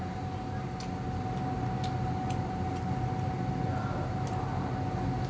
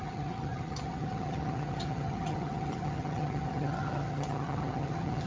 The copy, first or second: second